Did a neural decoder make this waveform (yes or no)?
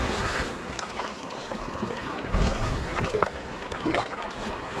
yes